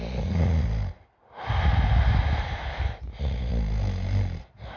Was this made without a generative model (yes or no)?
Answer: yes